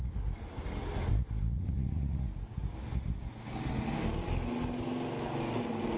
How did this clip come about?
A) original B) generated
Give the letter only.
A